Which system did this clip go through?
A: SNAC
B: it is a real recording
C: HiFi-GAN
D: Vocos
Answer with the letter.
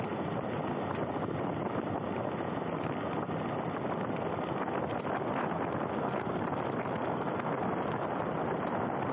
B